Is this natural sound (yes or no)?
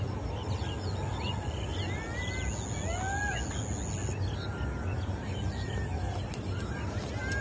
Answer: yes